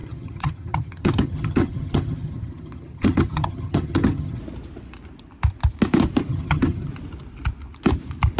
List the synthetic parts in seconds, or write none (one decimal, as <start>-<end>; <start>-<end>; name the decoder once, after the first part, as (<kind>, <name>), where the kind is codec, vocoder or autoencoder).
0.0-4.4 (vocoder, HiFi-GAN); 6.3-6.9